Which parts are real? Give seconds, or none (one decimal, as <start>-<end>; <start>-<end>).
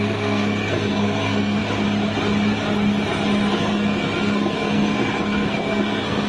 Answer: 1.6-3.5